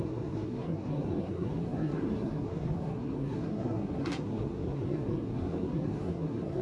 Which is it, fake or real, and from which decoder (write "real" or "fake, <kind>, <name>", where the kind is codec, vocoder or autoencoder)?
fake, codec, SNAC